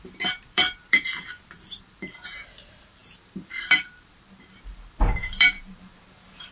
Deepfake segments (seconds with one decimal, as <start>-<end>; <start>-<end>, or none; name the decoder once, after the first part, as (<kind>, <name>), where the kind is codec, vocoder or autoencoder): 0.0-6.5 (vocoder, BigVGAN v2)